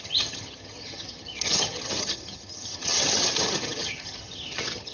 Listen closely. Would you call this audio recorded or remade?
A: remade